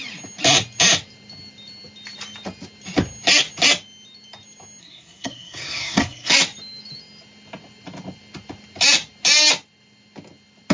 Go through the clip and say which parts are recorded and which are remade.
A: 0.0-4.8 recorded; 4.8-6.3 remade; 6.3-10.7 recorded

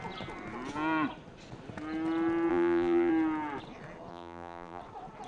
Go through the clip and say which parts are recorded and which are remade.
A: 0.0-2.5 recorded; 2.5-3.1 remade; 3.1-4.1 recorded; 4.1-4.8 remade; 4.8-5.3 recorded

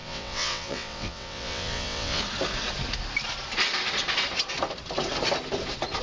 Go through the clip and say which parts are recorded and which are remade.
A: 0.0-2.2 remade; 2.2-6.0 recorded

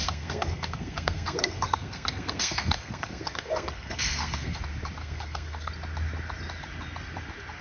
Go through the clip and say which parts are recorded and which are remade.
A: 0.0-4.6 remade; 4.6-5.0 recorded; 5.0-5.7 remade; 5.7-7.6 recorded